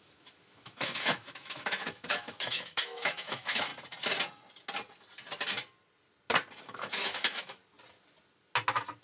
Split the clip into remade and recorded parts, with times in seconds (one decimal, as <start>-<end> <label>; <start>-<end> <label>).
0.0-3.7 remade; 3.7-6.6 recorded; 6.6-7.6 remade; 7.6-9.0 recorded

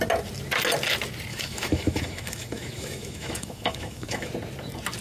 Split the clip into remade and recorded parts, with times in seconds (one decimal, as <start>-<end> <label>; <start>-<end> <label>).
0.0-1.3 recorded; 1.3-4.3 remade; 4.3-5.0 recorded

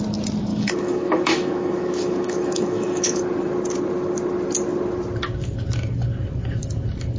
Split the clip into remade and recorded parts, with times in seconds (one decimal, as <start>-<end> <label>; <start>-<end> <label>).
0.0-0.5 recorded; 0.5-3.2 remade; 3.2-7.2 recorded